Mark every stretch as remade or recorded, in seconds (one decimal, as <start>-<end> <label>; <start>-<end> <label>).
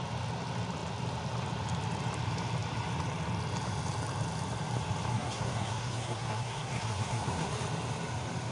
0.0-5.1 recorded; 5.1-7.5 remade; 7.5-8.5 recorded